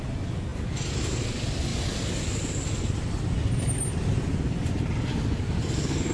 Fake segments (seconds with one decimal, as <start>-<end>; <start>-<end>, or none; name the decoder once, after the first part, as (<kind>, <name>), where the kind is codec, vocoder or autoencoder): none